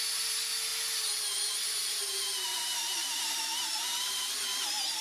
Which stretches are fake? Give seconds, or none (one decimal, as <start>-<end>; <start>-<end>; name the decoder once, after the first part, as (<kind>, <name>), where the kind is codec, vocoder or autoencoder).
1.8-4.3 (vocoder, BigVGAN v2)